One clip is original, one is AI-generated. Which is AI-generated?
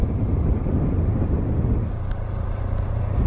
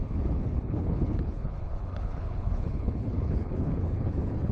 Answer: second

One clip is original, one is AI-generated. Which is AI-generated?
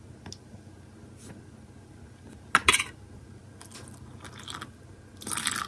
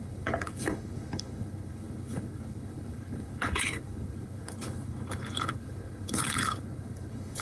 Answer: second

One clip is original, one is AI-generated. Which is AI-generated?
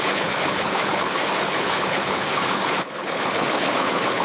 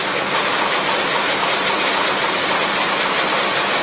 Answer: first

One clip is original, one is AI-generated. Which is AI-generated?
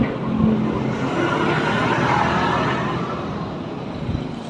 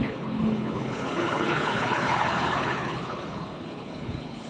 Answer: second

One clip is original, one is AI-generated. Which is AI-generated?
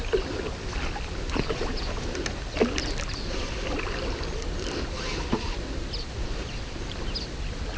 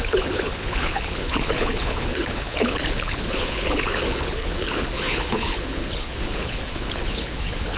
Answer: second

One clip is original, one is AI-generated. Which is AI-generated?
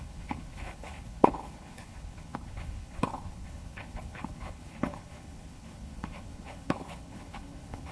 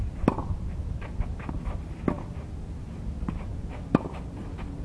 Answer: first